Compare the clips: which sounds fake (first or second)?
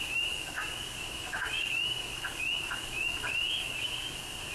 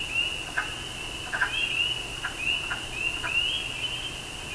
first